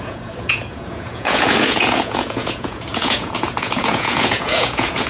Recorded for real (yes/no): no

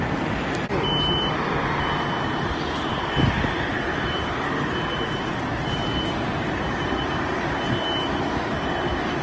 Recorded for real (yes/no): yes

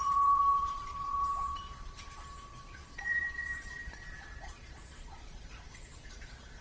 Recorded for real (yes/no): no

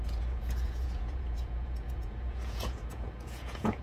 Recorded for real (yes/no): no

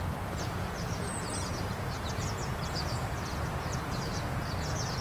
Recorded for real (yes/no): no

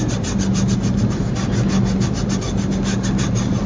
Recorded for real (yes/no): yes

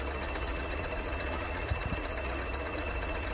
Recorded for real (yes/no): no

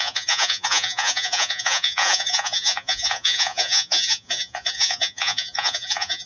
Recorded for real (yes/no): no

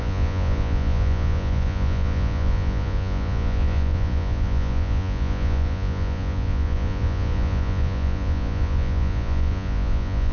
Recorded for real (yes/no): no